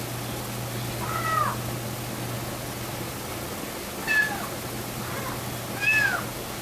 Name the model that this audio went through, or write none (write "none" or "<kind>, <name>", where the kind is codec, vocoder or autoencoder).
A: none